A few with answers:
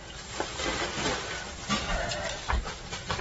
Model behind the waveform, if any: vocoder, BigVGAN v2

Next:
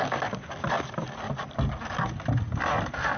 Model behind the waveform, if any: none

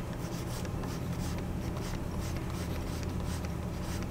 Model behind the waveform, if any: vocoder, BigVGAN v2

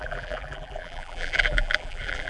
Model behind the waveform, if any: vocoder, BigVGAN v2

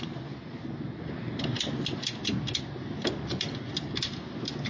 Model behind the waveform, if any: none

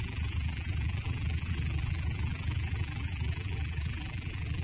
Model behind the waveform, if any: vocoder, BigVGAN v2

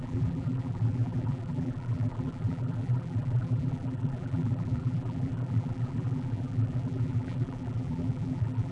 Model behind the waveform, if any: vocoder, BigVGAN v2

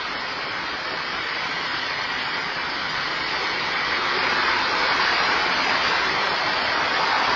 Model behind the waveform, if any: vocoder, BigVGAN v2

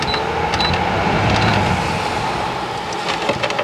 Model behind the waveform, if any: none